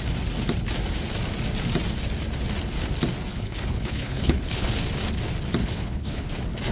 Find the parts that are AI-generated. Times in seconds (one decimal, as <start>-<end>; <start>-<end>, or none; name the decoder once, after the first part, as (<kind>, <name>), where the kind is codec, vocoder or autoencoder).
3.3-4.8 (codec, HILCodec); 5.6-6.3